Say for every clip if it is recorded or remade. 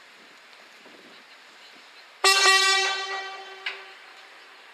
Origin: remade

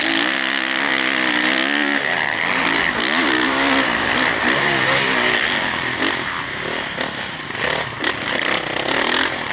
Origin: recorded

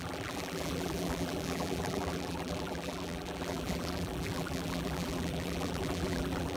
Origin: remade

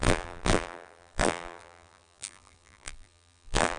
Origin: remade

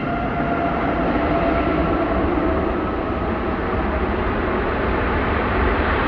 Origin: recorded